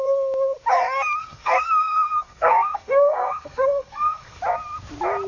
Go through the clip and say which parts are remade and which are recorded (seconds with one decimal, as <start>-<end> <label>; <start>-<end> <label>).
0.0-1.2 recorded; 1.2-4.4 remade; 4.4-5.3 recorded